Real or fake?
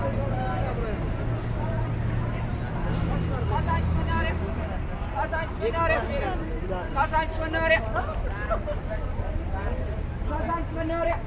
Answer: real